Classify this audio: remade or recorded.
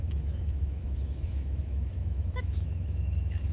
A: remade